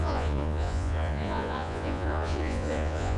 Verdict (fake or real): fake